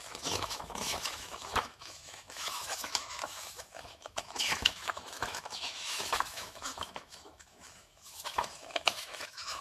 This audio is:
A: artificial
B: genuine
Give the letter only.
A